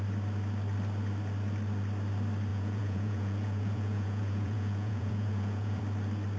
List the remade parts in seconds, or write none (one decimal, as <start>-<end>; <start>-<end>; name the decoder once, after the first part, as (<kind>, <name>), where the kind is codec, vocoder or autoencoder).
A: 2.5-5.8 (vocoder, Vocos)